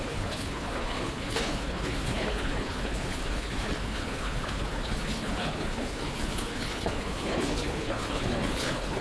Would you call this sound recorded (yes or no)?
no